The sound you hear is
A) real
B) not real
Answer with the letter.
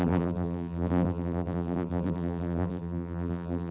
B